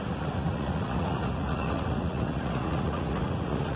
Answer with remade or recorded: remade